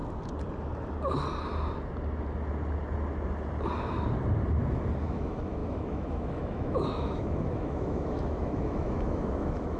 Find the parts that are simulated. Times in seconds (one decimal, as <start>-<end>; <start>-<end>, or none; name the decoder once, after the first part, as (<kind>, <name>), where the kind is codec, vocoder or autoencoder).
5.0-9.8 (autoencoder, DAC-VAE)